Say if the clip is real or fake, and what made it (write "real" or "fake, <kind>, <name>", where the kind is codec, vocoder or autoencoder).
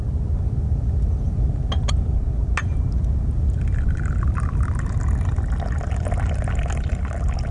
real